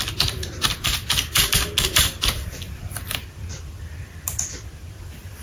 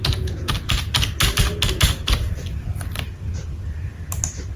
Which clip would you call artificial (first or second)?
first